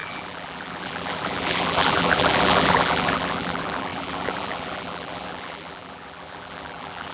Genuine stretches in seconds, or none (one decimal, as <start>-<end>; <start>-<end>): none